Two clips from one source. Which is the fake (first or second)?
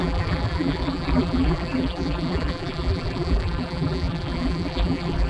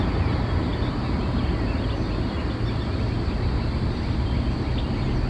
first